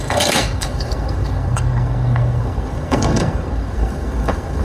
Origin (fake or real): fake